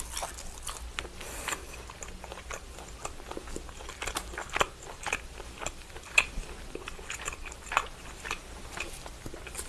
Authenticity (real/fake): real